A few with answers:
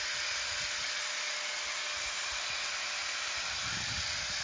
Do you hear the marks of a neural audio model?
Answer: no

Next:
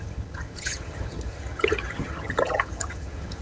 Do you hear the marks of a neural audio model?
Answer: yes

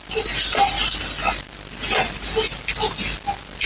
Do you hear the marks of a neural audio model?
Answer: no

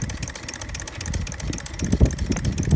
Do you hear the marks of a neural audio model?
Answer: no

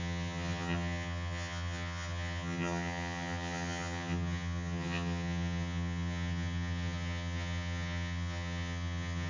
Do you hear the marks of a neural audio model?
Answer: yes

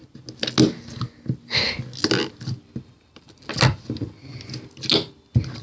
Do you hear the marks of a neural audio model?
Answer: no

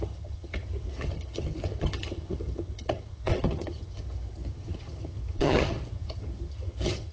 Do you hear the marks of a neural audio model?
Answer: yes